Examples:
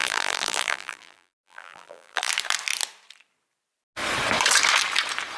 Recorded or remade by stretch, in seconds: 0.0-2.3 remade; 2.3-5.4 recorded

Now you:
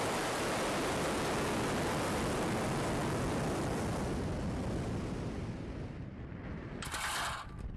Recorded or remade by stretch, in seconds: 0.0-7.8 recorded

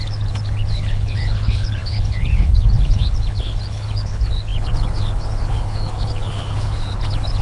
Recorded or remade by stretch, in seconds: 0.0-7.4 remade